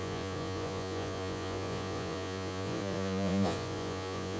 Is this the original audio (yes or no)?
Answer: no